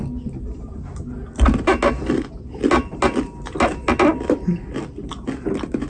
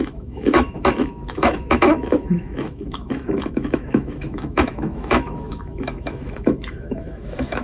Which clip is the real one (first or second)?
first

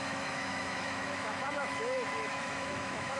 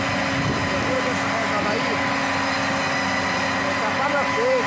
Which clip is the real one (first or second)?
second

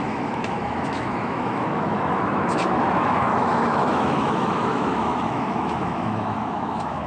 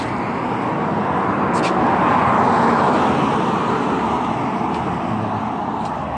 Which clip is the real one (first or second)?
second